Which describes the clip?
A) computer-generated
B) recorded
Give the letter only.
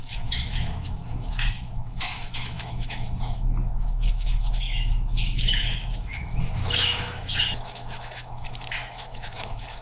A